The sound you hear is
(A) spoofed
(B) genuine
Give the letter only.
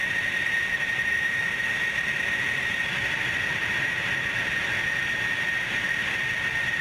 B